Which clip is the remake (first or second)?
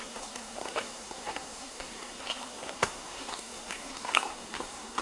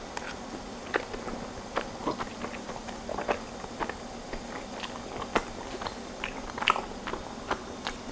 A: first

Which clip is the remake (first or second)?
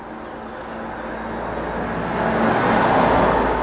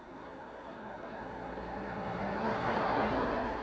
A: second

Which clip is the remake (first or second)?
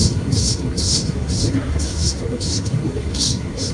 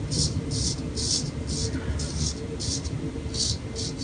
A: first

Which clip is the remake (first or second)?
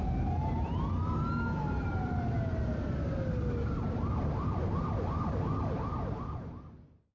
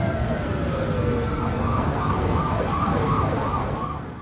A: second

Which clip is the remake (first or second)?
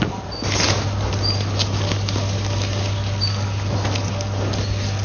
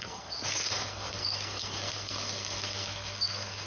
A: second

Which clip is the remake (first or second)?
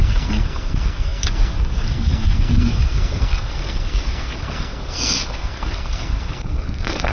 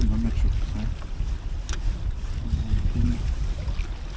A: first